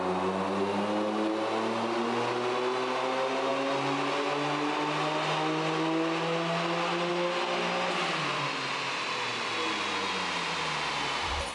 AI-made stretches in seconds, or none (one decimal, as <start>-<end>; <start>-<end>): none